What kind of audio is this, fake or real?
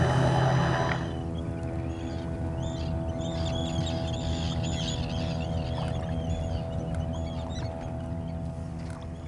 real